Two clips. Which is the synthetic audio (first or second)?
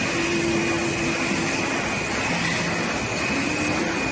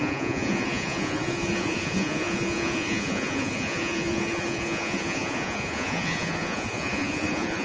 second